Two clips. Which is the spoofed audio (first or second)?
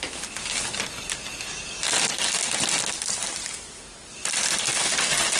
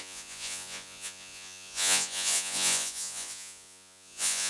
second